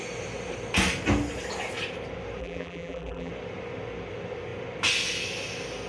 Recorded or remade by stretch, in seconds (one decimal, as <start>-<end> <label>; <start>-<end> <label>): 0.0-2.4 recorded; 2.4-3.3 remade; 3.3-5.9 recorded